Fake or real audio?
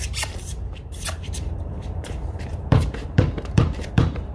fake